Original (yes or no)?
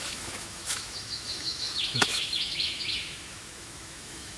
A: no